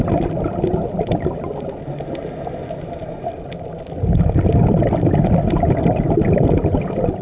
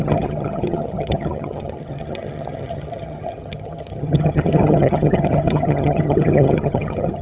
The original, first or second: first